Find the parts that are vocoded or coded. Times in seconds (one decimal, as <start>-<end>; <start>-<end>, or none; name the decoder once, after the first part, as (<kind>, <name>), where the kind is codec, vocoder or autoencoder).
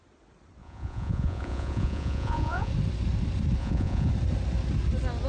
0.6-2.7 (vocoder, Vocos); 3.6-4.1